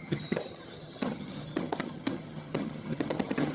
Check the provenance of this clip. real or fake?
fake